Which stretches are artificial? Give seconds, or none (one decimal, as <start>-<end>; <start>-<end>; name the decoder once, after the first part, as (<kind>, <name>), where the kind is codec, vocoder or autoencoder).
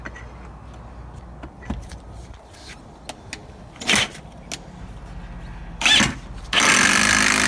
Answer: none